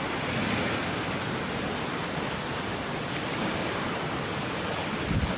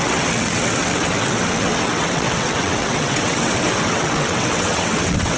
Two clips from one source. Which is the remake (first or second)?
second